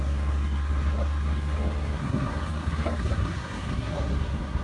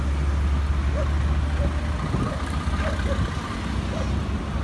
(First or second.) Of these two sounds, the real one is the second